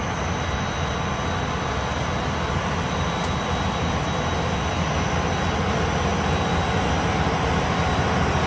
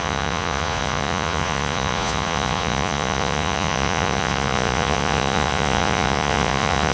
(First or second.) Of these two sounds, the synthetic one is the second